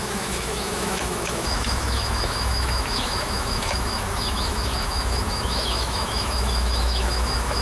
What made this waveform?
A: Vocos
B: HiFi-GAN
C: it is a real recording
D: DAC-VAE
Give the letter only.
D